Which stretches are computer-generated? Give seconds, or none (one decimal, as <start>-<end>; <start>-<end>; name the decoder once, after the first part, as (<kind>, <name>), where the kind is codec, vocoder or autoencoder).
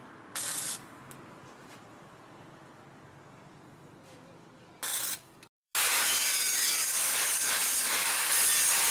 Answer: 4.9-8.3 (codec, DAC)